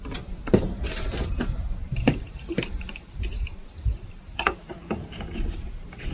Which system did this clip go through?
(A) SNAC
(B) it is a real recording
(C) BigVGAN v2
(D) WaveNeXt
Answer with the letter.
C